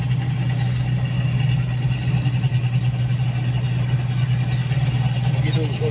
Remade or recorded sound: recorded